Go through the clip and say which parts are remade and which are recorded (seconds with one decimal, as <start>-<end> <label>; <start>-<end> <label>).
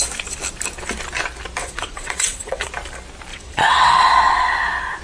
0.0-1.6 recorded; 1.6-2.7 remade; 2.7-3.3 recorded; 3.3-3.9 remade; 3.9-5.0 recorded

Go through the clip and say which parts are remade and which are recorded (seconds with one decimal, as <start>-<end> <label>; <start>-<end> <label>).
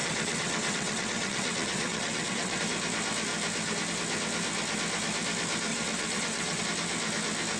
0.0-2.6 remade; 2.6-5.7 recorded; 5.7-6.6 remade; 6.6-7.6 recorded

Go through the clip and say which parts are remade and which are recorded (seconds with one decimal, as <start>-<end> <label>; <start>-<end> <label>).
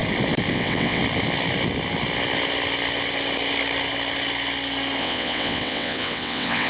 0.0-0.5 recorded; 0.5-1.0 remade; 1.0-5.0 recorded; 5.0-6.7 remade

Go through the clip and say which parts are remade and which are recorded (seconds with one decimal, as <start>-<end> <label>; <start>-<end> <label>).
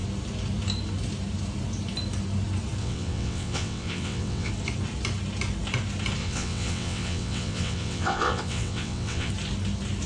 0.0-2.8 recorded; 2.8-4.5 remade; 4.5-6.2 recorded; 6.2-9.3 remade; 9.3-10.1 recorded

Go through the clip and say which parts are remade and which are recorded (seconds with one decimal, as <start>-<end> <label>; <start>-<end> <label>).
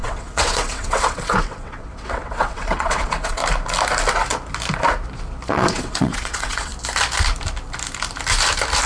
0.0-3.4 remade; 3.4-5.5 recorded; 5.5-6.7 remade; 6.7-8.9 recorded